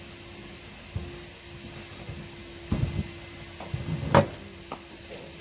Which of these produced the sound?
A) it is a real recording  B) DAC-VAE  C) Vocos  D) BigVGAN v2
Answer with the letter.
A